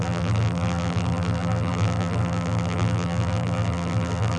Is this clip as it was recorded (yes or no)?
no